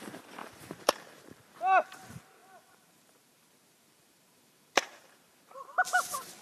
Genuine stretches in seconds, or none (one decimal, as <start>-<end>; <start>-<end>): 0.0-0.4; 1.6-2.4; 5.5-6.4